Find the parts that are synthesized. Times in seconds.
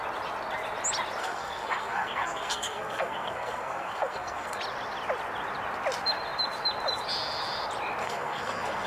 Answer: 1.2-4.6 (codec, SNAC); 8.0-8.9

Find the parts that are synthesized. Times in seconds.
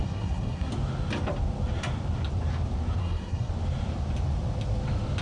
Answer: 0.0-0.7 (codec, SNAC); 3.0-3.5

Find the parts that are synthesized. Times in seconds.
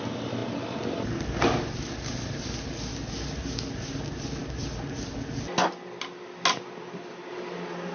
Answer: none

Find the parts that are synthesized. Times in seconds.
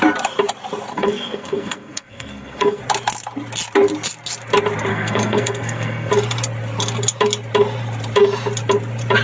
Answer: 0.9-2.8 (codec, SNAC); 4.9-6.1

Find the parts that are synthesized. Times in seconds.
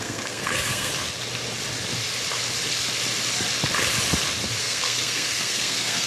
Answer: 0.0-0.9 (codec, SNAC); 4.6-6.1